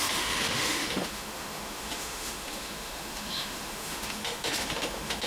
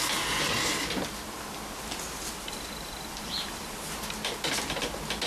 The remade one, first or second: first